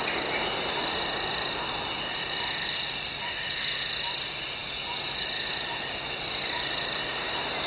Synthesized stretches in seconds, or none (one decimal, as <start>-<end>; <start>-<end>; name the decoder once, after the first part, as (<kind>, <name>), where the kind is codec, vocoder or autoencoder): none